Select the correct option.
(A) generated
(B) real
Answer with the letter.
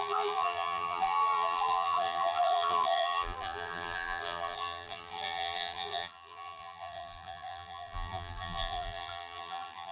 A